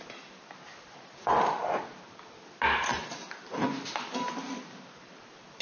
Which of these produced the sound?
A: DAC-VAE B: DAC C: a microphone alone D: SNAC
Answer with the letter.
C